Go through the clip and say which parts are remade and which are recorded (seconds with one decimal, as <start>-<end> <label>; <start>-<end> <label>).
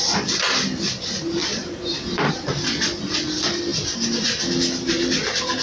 0.0-1.4 recorded; 1.4-2.3 remade; 2.3-5.6 recorded